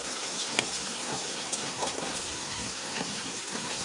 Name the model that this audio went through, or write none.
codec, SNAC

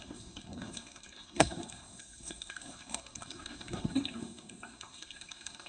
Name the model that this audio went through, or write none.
codec, SNAC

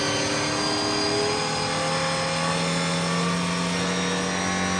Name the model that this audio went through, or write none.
none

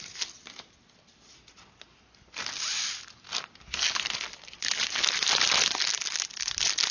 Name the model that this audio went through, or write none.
none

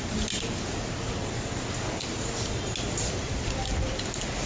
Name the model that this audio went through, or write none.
none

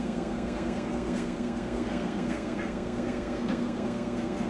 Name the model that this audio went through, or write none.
codec, SNAC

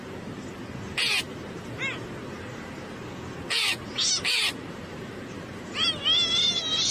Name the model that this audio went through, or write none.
none